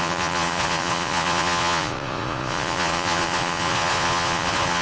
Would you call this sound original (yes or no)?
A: no